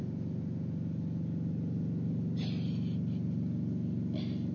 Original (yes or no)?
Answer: yes